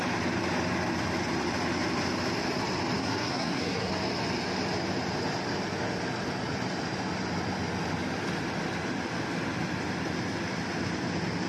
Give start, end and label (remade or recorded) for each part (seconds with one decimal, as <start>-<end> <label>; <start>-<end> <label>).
0.0-3.0 recorded; 3.0-3.9 remade; 3.9-11.5 recorded